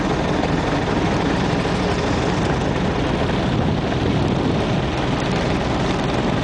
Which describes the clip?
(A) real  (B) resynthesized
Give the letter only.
A